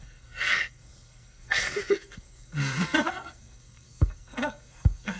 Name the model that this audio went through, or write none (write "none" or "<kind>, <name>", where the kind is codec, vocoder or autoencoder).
codec, SNAC